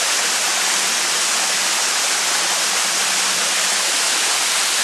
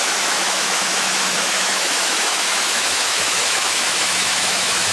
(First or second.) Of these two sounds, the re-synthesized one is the second